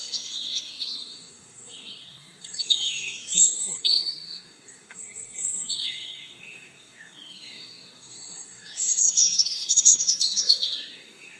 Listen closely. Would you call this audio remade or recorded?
remade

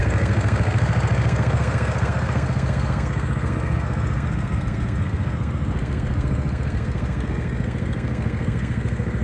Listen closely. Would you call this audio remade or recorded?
remade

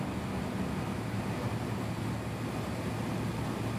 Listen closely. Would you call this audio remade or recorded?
recorded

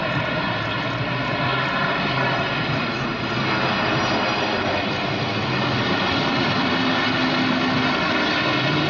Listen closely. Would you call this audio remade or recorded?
recorded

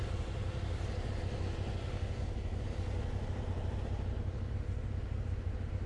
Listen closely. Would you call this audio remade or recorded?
recorded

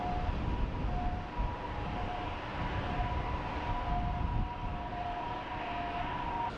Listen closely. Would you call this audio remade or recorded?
recorded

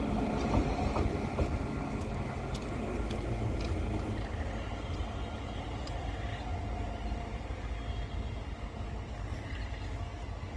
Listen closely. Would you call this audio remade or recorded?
recorded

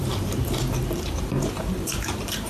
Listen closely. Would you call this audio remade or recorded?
remade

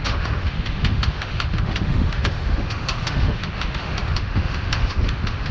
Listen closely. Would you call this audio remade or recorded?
remade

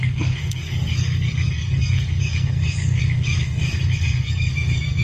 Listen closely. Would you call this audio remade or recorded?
remade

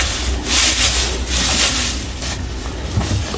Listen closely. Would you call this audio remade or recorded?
recorded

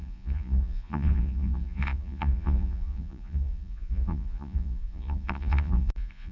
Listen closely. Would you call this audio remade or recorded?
remade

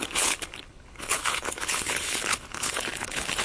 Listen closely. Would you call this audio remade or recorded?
remade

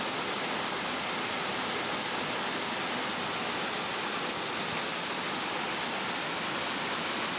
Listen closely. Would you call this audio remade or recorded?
recorded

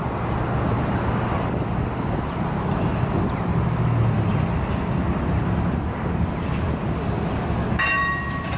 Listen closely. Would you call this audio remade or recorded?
recorded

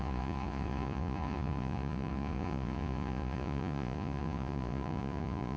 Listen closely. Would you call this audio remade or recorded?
remade